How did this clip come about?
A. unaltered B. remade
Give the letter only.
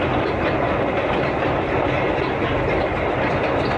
A